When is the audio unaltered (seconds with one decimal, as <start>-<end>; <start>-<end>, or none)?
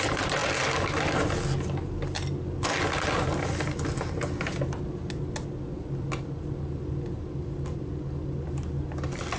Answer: 0.0-9.4